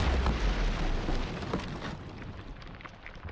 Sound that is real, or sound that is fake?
real